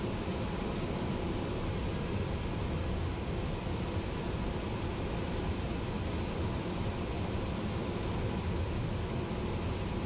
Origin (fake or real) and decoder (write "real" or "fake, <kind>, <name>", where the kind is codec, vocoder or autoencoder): real